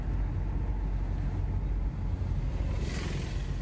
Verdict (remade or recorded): recorded